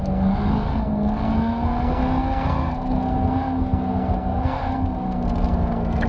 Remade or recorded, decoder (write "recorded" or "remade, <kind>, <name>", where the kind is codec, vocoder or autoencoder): remade, codec, SNAC